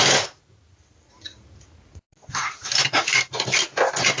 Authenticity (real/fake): real